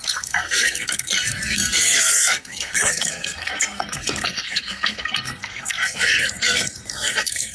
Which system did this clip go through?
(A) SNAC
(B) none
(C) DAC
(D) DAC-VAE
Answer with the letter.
A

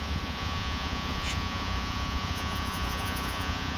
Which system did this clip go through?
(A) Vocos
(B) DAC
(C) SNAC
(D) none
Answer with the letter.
A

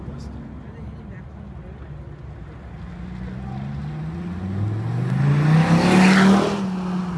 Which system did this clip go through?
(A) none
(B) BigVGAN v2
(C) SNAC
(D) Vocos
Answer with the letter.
A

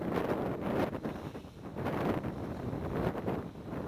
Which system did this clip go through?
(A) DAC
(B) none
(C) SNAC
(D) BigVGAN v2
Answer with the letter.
B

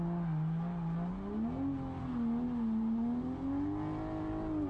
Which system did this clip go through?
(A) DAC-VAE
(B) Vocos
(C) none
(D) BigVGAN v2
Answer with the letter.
C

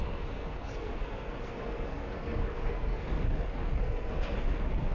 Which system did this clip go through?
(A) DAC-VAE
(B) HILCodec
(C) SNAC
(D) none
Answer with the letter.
C